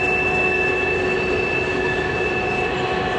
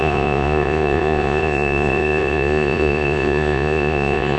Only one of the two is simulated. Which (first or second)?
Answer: second